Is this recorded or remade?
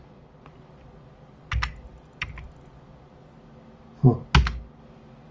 recorded